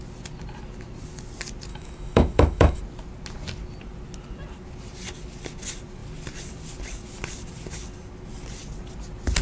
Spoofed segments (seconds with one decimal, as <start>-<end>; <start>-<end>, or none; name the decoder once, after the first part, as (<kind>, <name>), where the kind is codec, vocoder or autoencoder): 1.7-2.8 (autoencoder, DAC-VAE)